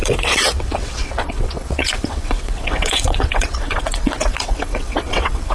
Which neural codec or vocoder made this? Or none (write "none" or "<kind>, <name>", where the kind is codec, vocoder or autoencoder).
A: vocoder, WaveNeXt